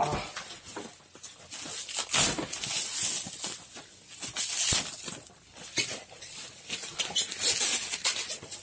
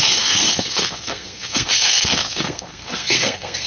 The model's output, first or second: second